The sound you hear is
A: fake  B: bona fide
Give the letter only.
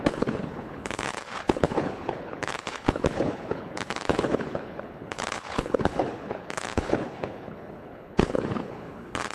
A